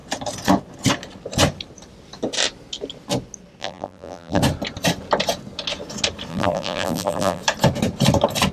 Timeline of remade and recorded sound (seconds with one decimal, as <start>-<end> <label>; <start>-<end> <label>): 0.0-3.6 recorded; 3.6-4.4 remade; 4.4-6.3 recorded; 6.3-7.4 remade; 7.4-8.5 recorded